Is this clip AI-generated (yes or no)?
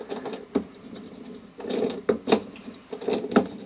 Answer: no